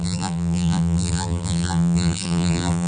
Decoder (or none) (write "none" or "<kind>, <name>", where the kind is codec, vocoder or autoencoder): vocoder, BigVGAN v2